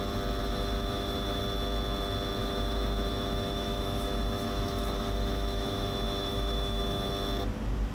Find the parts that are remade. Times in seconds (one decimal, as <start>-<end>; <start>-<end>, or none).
0.4-1.4; 2.4-7.1